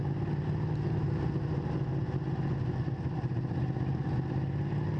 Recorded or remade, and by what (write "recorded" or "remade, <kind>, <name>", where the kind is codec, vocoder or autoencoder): recorded